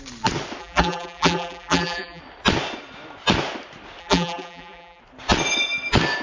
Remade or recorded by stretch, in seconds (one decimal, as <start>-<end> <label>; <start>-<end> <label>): 0.0-0.6 recorded; 0.6-2.2 remade; 2.2-4.0 recorded; 4.0-5.0 remade; 5.0-6.2 recorded